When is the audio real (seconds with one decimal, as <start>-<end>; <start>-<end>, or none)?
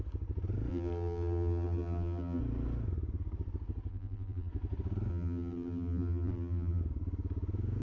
0.0-0.7; 2.4-3.9; 4.5-5.1; 6.8-7.8